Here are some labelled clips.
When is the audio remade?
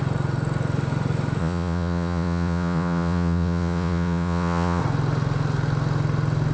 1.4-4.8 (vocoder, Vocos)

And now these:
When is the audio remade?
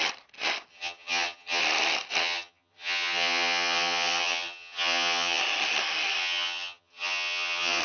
0.7-1.6 (vocoder, HiFi-GAN); 2.2-5.4; 6.2-7.8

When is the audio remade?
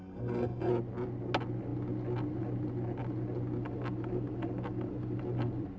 0.0-0.7 (codec, SNAC)